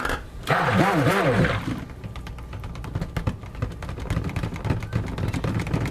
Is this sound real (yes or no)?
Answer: yes